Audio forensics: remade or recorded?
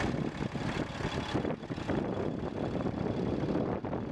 recorded